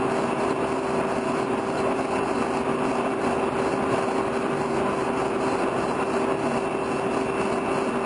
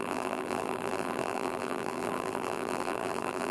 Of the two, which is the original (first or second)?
first